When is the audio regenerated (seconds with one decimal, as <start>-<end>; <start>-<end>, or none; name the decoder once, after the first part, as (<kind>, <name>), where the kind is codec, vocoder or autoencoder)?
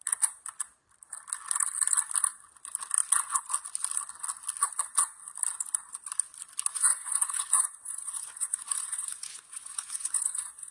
6.7-10.7 (vocoder, Vocos)